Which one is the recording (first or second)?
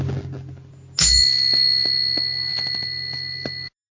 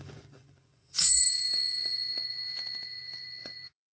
first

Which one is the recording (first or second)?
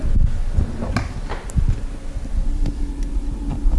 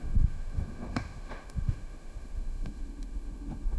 first